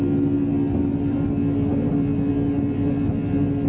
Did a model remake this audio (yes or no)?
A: no